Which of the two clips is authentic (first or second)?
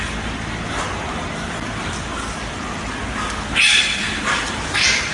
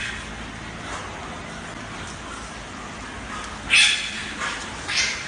second